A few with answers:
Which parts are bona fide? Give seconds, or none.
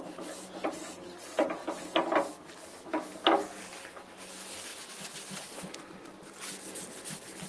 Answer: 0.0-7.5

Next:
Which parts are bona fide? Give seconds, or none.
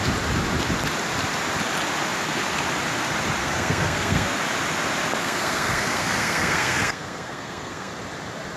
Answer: 0.0-3.4; 4.4-5.2; 7.9-8.6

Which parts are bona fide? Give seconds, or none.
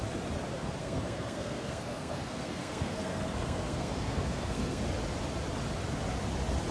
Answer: 0.0-0.8; 4.8-6.7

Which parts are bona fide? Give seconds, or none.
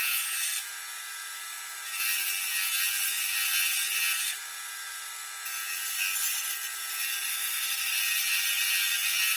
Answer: 0.0-7.3; 7.9-9.4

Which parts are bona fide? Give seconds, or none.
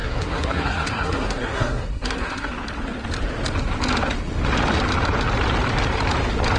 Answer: 2.5-6.6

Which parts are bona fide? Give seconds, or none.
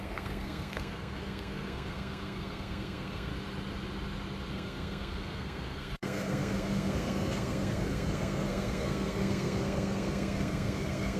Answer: 3.3-4.5